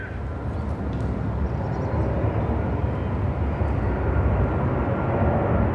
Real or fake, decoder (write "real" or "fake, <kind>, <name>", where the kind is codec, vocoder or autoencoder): real